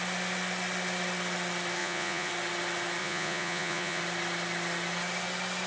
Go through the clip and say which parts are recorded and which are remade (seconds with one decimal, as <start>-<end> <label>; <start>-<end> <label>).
0.0-1.8 recorded; 1.8-2.3 remade; 2.3-3.0 recorded; 3.0-4.0 remade; 4.0-5.7 recorded